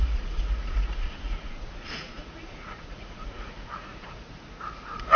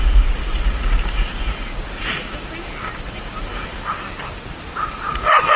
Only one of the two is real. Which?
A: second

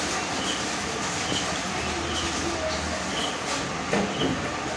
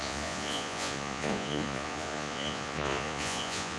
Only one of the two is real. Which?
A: first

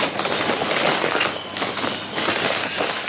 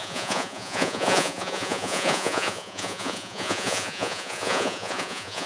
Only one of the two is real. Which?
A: first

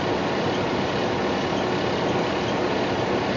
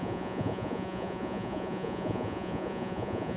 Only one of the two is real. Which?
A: first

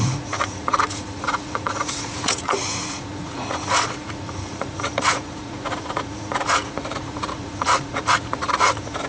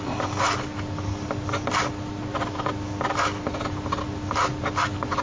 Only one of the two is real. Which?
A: second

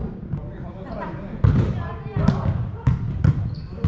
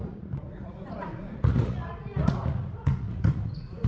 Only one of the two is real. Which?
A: first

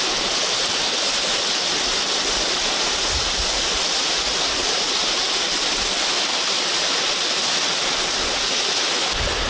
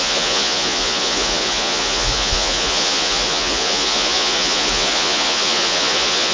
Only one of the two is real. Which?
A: first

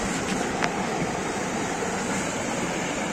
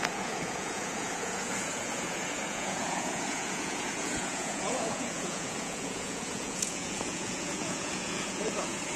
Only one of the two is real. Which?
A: first